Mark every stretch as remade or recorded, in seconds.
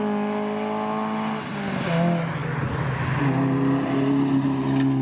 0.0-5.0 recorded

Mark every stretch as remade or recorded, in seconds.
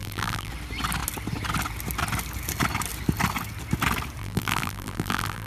0.0-0.5 remade; 0.5-4.2 recorded; 4.2-5.5 remade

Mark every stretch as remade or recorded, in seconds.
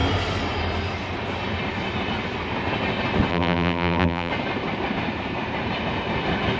0.0-3.3 recorded; 3.3-4.3 remade; 4.3-6.6 recorded